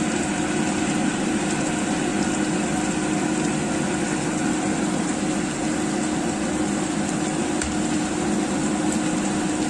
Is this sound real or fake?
real